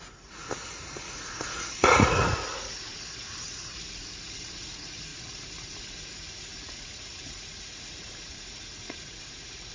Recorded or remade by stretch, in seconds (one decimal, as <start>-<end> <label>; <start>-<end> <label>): 0.0-9.7 remade